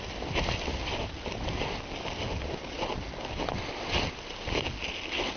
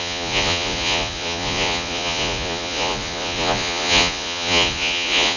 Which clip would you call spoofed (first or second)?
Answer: second